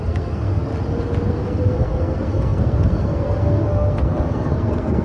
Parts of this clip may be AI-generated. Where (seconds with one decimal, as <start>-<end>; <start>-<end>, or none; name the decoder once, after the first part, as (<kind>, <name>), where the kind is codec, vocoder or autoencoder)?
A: 0.0-0.7 (codec, SNAC); 1.3-5.0